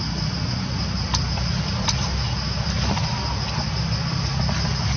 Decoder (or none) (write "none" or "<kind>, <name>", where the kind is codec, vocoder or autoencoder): none